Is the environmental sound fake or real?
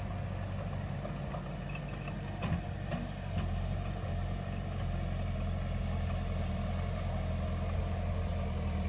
real